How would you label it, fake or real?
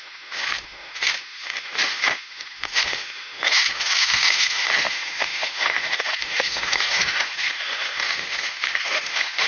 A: fake